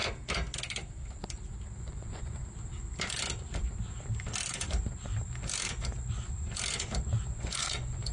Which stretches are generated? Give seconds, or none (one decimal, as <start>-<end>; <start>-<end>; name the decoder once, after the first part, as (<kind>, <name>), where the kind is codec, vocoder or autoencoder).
1.8-2.4 (vocoder, Vocos); 7.3-8.1